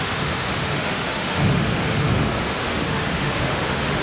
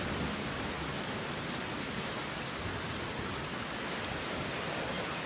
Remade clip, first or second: first